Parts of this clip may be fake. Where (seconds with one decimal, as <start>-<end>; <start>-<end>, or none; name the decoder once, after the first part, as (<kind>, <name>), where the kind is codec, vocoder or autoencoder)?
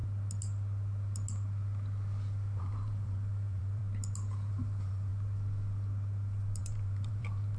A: 2.6-3.8 (vocoder, BigVGAN v2); 4.5-5.1; 6.6-7.6